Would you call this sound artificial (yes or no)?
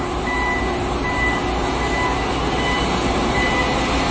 no